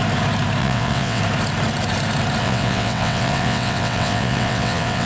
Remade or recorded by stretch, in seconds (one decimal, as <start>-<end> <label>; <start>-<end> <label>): 0.0-0.6 recorded; 0.6-1.2 remade; 1.2-2.4 recorded; 2.4-5.1 remade